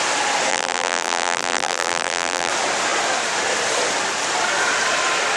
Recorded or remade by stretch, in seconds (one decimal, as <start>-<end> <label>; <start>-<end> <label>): 0.0-0.5 recorded; 0.5-2.5 remade; 2.5-5.4 recorded